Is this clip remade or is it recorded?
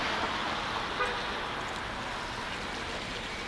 recorded